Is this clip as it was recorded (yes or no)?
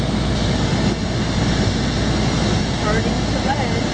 yes